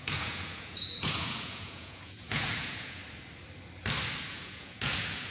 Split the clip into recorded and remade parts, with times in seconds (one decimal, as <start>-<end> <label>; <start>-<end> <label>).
0.0-3.0 remade; 3.0-4.3 recorded; 4.3-5.3 remade